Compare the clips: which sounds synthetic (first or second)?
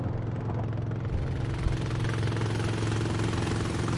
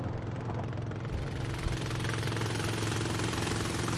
second